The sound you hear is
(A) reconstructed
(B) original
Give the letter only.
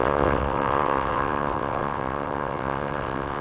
A